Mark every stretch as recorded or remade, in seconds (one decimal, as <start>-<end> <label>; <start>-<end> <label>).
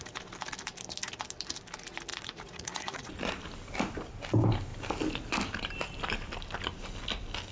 0.0-2.1 recorded; 2.1-3.1 remade; 3.1-7.5 recorded